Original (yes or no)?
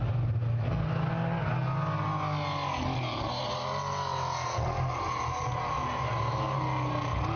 yes